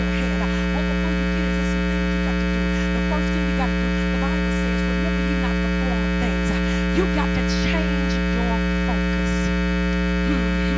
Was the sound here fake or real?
real